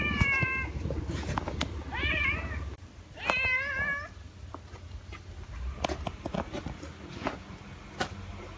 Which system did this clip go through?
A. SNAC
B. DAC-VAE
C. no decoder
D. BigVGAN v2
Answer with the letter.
C